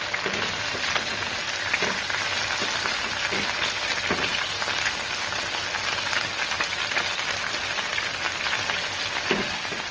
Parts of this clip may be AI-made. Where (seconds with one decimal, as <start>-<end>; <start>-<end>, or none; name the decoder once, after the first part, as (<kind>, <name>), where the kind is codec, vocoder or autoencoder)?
none